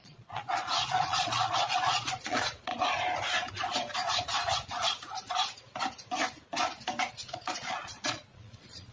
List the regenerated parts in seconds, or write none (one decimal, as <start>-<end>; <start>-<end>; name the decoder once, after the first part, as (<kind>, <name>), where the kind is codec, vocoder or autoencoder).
0.0-2.7 (vocoder, Vocos); 7.1-8.9